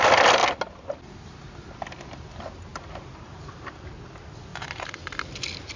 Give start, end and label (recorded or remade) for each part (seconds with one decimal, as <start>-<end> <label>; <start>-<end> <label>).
0.0-2.7 recorded; 2.7-3.9 remade; 3.9-4.5 recorded; 4.5-5.2 remade; 5.2-5.8 recorded